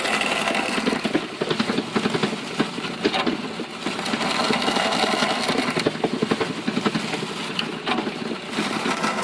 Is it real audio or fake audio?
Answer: real